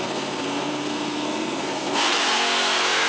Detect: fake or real fake